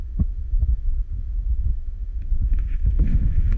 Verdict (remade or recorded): remade